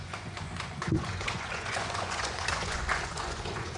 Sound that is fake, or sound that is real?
fake